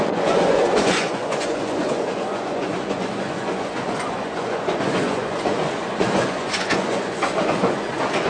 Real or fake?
fake